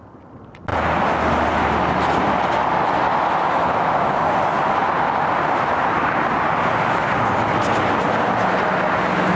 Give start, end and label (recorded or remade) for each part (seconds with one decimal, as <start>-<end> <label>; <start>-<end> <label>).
0.0-9.4 recorded